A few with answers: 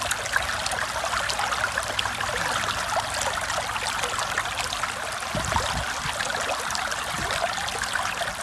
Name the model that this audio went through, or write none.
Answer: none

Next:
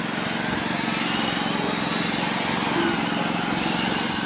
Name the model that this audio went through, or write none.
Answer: none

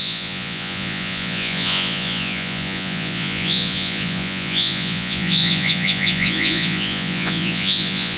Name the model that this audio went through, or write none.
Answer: vocoder, Vocos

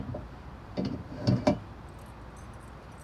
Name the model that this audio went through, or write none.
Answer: none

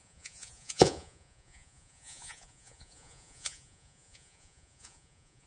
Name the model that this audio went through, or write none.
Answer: vocoder, Vocos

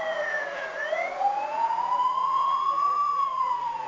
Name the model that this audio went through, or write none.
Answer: vocoder, Vocos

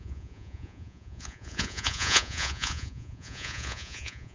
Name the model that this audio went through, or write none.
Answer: vocoder, Vocos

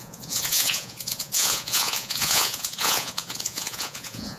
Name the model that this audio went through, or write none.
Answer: vocoder, Vocos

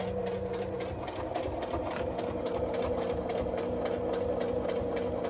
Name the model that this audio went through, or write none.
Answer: none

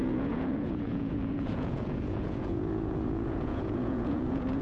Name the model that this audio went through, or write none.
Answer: vocoder, Vocos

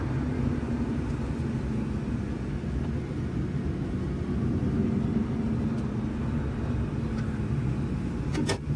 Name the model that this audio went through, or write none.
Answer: none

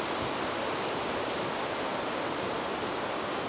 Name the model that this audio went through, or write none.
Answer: none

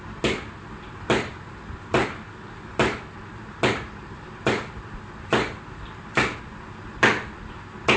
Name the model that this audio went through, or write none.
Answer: none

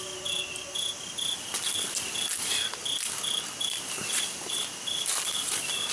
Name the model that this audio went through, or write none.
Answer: none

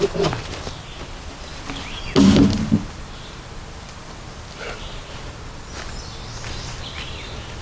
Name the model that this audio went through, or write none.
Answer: none